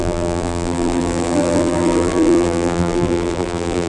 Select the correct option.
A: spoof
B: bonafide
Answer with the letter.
A